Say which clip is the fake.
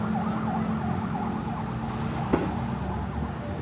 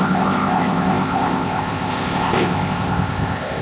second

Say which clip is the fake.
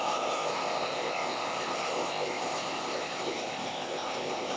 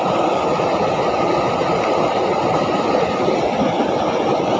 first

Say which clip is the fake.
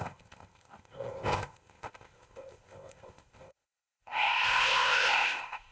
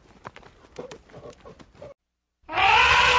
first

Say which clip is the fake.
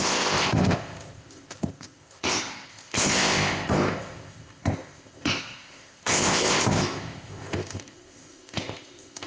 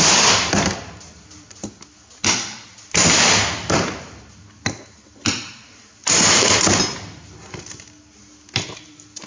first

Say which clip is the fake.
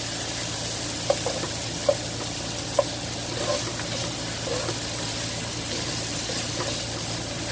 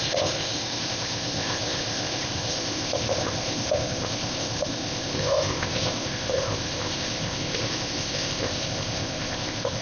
second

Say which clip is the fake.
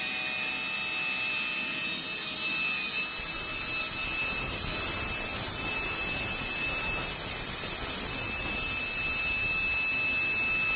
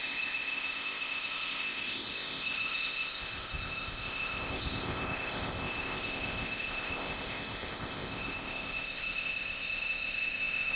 second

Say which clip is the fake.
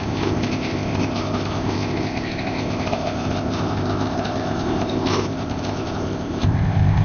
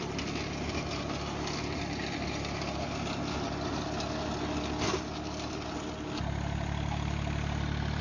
first